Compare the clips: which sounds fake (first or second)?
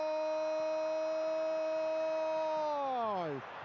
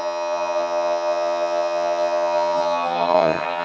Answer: second